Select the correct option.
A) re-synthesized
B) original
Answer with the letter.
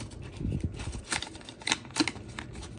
B